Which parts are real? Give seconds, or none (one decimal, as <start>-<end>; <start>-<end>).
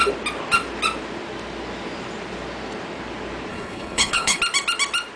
0.0-3.5; 4.4-5.2